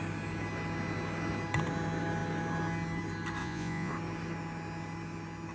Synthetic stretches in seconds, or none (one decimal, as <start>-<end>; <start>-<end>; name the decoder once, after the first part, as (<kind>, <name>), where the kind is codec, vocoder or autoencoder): 3.4-3.9 (vocoder, Vocos)

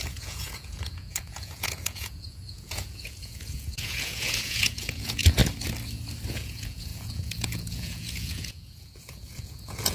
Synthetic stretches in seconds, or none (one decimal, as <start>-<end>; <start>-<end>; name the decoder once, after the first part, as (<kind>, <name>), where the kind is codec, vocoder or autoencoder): 0.0-5.4 (vocoder, Vocos); 6.3-9.9

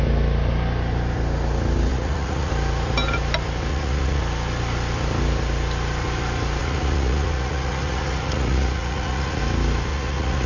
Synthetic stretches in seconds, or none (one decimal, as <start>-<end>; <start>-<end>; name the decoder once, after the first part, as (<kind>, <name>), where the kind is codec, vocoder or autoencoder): 1.9-2.5 (vocoder, Vocos); 3.7-4.2; 6.6-9.4; 9.9-10.5